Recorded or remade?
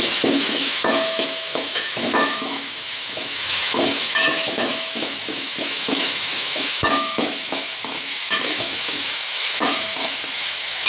remade